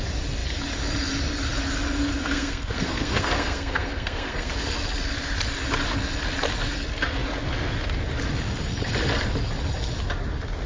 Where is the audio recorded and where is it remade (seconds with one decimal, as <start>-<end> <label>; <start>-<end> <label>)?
0.0-2.2 recorded; 2.2-4.5 remade; 4.5-10.7 recorded